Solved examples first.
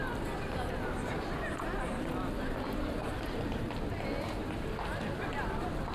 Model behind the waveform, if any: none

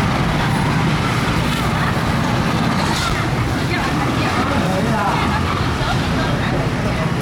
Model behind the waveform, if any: vocoder, BigVGAN v2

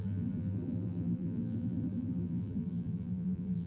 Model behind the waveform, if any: vocoder, BigVGAN v2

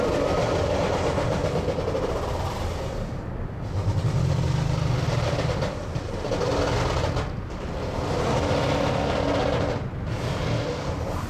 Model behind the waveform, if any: none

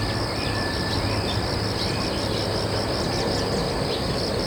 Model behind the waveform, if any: none